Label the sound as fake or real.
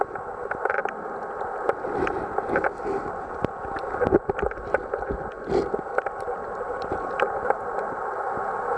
real